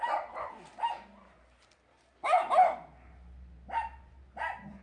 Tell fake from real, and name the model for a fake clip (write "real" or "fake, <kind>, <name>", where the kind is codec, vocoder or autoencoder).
real